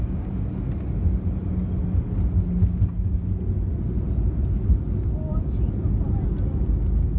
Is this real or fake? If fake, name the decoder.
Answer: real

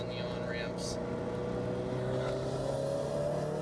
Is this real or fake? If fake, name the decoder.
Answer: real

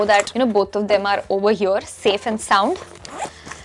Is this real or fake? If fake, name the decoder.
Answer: real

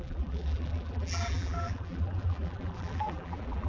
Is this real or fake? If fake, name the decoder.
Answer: fake, vocoder, BigVGAN v2